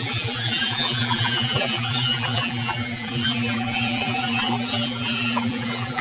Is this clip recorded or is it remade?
remade